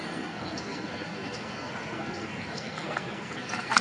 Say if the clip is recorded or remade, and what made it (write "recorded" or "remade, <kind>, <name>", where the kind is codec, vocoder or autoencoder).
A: remade, codec, SNAC